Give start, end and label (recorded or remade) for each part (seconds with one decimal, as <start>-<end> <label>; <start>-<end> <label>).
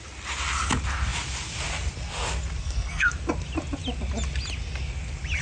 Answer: 0.0-2.6 recorded; 2.6-3.1 remade; 3.1-5.4 recorded